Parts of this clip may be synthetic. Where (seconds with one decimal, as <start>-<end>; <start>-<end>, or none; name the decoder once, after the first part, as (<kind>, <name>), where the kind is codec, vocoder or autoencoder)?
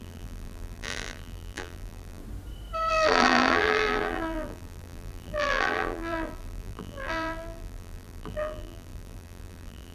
0.0-2.2 (vocoder, BigVGAN v2); 2.9-9.9